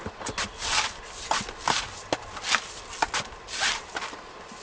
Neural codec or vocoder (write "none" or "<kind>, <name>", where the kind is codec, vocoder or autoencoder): none